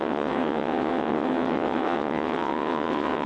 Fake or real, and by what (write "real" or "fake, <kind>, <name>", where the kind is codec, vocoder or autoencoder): fake, vocoder, WaveNeXt